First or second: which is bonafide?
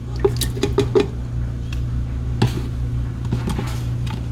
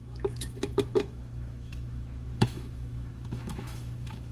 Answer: first